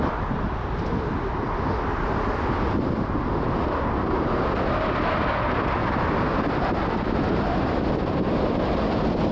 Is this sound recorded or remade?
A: recorded